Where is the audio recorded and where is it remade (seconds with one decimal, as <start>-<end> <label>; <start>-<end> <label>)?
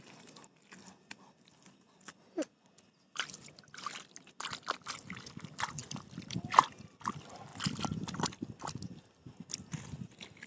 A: 0.0-10.5 recorded